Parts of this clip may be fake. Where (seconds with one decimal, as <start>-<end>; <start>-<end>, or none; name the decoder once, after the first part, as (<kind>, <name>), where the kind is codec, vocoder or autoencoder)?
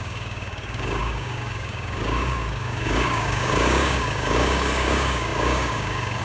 0.0-6.2 (codec, DAC)